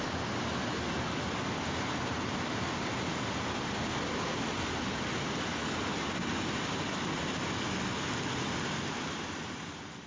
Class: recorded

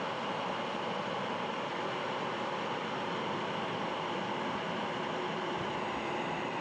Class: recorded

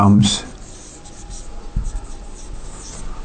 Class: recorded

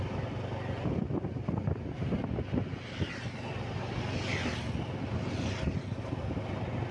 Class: recorded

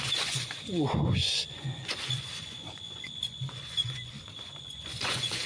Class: remade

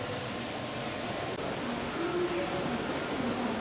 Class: recorded